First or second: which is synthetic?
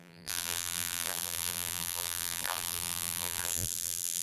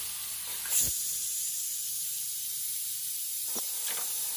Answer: first